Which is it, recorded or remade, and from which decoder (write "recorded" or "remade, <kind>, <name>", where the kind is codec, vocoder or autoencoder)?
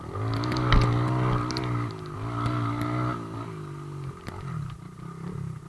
recorded